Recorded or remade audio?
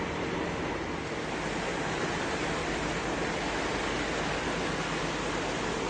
recorded